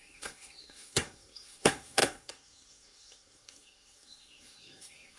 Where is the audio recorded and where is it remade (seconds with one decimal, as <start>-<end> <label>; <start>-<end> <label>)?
0.0-5.2 remade